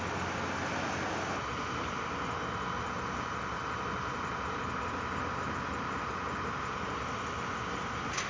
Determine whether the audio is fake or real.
real